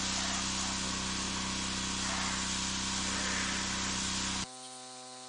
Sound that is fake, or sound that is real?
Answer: real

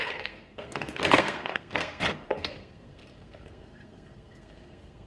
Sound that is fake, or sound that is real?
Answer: fake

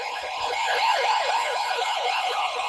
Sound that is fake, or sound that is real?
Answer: fake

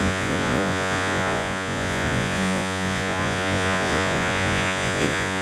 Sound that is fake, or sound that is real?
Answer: fake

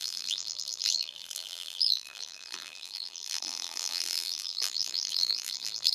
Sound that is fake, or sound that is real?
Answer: fake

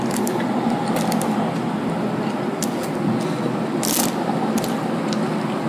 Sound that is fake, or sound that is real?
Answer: real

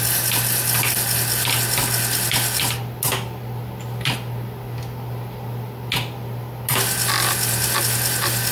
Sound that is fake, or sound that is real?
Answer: real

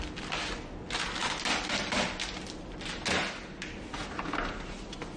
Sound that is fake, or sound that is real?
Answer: real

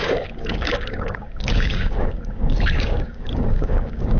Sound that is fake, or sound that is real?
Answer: fake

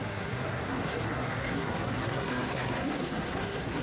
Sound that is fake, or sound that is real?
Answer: fake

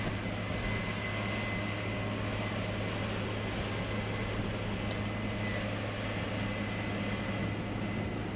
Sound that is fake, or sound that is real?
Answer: real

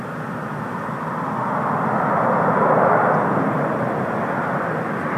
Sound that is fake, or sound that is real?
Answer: real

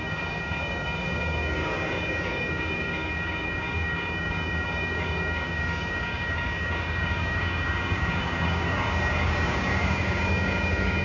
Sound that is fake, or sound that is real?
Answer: fake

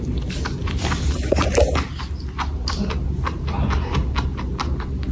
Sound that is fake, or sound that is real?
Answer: real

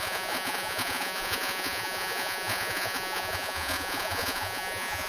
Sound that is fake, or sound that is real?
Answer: fake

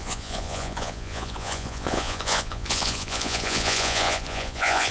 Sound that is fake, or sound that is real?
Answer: fake